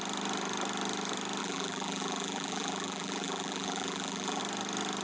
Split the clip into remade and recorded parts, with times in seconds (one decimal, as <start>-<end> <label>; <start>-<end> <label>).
0.0-1.4 recorded; 1.4-4.4 remade; 4.4-5.0 recorded